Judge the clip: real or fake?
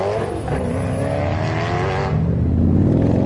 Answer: real